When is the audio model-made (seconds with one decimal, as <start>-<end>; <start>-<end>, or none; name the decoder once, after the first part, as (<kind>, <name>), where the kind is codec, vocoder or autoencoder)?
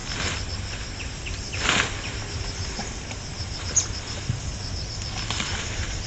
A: 2.3-4.5 (vocoder, BigVGAN v2); 5.3-6.1